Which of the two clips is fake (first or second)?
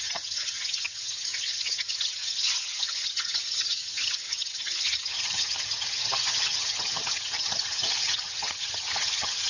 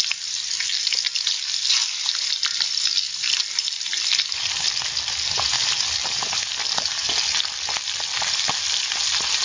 first